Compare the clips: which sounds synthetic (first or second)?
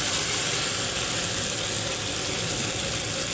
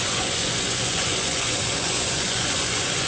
second